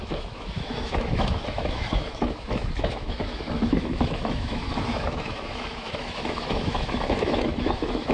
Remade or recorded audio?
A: remade